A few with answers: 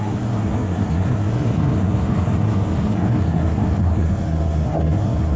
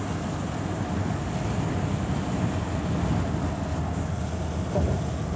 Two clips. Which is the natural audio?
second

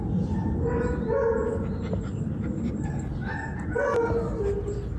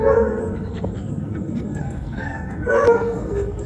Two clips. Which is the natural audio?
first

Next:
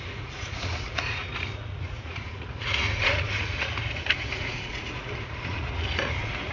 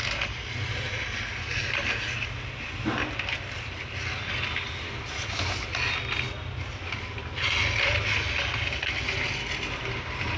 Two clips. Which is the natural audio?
second